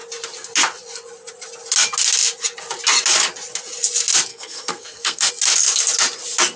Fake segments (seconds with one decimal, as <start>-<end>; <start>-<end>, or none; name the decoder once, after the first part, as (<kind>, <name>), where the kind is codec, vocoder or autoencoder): 4.3-5.3 (codec, SNAC)